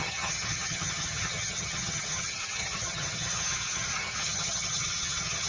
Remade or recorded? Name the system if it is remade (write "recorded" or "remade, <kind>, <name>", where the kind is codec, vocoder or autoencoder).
remade, vocoder, HiFi-GAN